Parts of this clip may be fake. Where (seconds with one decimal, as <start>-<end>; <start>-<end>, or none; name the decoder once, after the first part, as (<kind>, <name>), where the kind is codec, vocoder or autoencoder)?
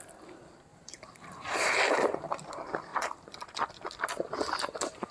0.7-2.5 (vocoder, BigVGAN v2); 2.9-3.7